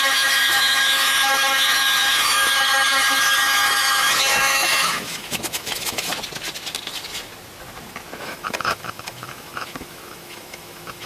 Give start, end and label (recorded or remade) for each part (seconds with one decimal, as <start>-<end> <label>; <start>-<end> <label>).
0.0-6.1 remade; 6.1-8.2 recorded; 8.2-11.1 remade